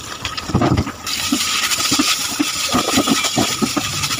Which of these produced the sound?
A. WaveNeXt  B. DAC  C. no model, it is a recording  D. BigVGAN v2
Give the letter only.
C